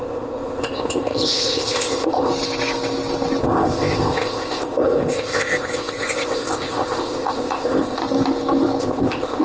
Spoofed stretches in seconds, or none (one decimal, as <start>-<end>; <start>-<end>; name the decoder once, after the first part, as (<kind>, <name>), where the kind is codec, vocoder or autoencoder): 0.0-2.3 (codec, ZipCodec); 3.4-8.0; 8.8-9.4